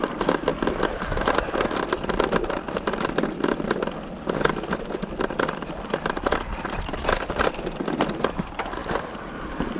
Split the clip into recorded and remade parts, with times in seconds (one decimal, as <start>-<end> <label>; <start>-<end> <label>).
0.0-9.8 recorded